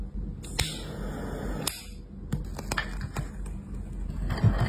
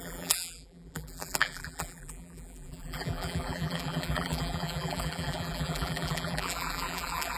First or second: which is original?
first